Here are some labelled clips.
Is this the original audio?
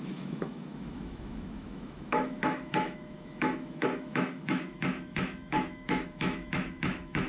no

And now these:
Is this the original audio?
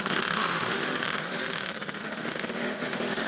no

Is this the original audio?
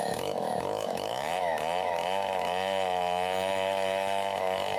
no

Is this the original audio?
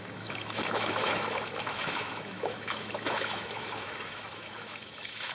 no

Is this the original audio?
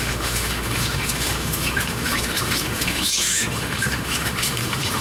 no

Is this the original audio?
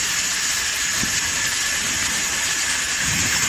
yes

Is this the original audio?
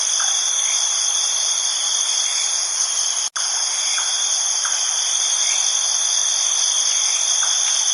yes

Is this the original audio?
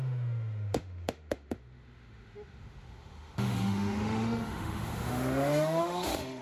no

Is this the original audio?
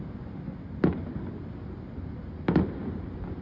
yes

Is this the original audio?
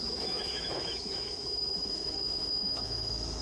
no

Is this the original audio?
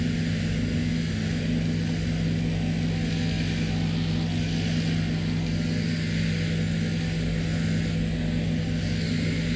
yes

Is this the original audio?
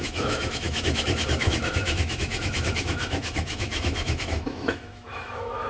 no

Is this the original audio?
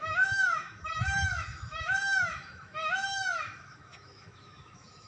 no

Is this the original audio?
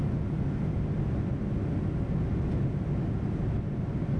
yes